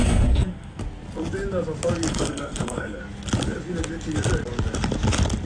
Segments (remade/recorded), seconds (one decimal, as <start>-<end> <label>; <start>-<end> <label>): 0.0-0.8 remade; 0.8-2.1 recorded; 2.1-3.0 remade; 3.0-5.4 recorded